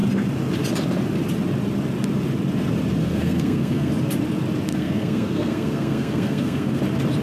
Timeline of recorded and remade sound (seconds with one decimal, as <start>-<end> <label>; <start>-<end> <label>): 0.0-3.0 recorded; 3.0-3.9 remade; 3.9-4.7 recorded; 4.7-6.8 remade; 6.8-7.2 recorded